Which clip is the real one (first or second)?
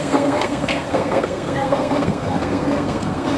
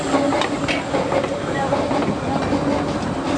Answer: second